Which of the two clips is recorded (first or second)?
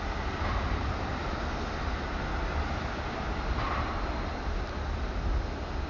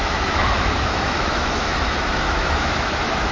first